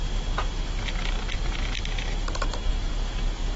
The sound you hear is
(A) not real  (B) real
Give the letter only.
B